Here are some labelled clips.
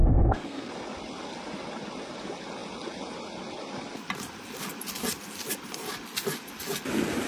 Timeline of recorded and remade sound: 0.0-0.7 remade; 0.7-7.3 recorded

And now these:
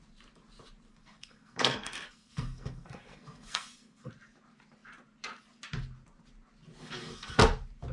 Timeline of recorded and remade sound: 0.0-0.9 recorded; 0.9-4.1 remade; 4.1-6.8 recorded; 6.8-7.4 remade; 7.4-7.9 recorded

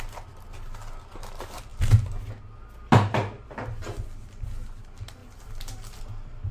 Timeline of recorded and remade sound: 0.0-6.5 recorded

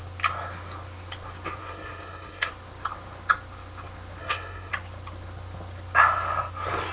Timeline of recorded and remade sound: 0.0-1.6 recorded; 1.6-2.5 remade; 2.5-4.2 recorded; 4.2-4.7 remade; 4.7-6.9 recorded

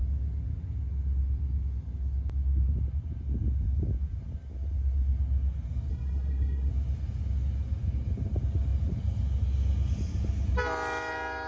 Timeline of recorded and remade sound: 0.0-5.9 recorded; 5.9-6.7 remade; 6.7-11.5 recorded

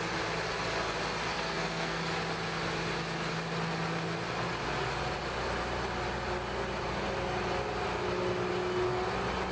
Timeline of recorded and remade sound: 0.0-1.3 recorded; 1.3-2.0 remade; 2.0-9.5 recorded

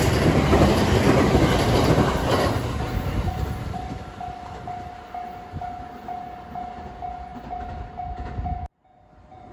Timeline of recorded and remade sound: 0.0-9.5 recorded